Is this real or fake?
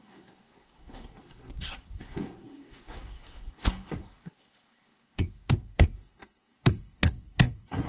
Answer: fake